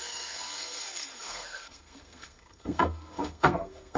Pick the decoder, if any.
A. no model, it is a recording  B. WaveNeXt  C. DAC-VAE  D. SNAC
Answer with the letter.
D